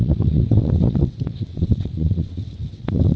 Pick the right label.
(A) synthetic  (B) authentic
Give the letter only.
A